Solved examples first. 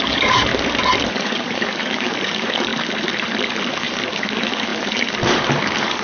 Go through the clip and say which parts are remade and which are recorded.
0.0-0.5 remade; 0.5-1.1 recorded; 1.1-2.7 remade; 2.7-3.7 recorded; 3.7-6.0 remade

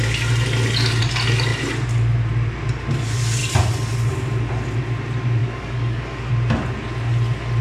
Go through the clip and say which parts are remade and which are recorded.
0.0-5.4 recorded; 5.4-6.3 remade; 6.3-7.6 recorded

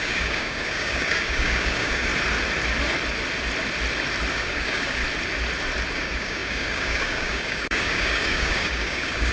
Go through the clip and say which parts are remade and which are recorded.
0.0-2.1 remade; 2.1-4.3 recorded; 4.3-5.0 remade; 5.0-5.9 recorded; 5.9-9.3 remade

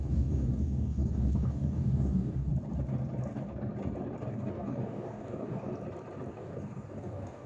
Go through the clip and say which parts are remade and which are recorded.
0.0-2.5 remade; 2.5-4.3 recorded; 4.3-5.7 remade; 5.7-6.3 recorded; 6.3-7.5 remade

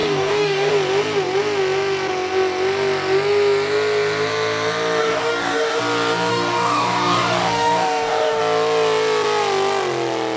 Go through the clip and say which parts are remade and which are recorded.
0.0-0.7 remade; 0.7-5.0 recorded; 5.0-5.8 remade; 5.8-6.3 recorded; 6.3-8.4 remade; 8.4-10.4 recorded